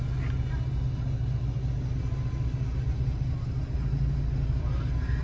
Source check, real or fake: real